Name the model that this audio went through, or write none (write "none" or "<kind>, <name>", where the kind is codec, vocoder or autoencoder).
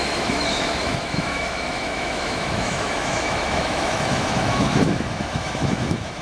autoencoder, DAC-VAE